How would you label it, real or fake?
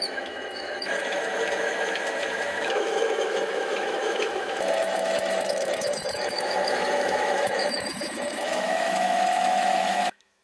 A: fake